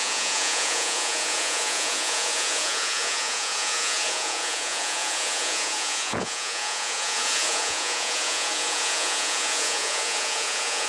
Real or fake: fake